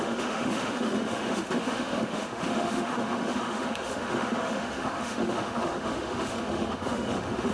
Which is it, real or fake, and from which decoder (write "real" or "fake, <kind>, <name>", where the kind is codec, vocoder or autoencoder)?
fake, autoencoder, DAC-VAE